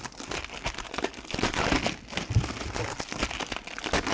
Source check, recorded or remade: recorded